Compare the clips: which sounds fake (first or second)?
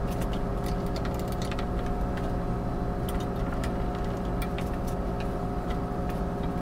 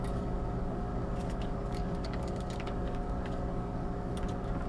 second